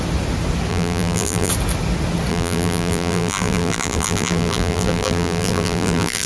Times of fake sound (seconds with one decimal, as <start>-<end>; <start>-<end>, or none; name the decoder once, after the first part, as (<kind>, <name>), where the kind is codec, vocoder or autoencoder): 0.7-1.5 (vocoder, BigVGAN v2); 2.3-6.3